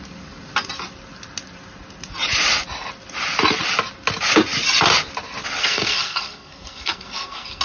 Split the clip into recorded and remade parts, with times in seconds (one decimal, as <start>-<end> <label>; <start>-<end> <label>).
0.0-5.6 recorded; 5.6-7.6 remade